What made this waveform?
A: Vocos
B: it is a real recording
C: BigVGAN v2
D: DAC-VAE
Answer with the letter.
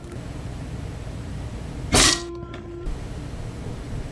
C